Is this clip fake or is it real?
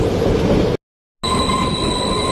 real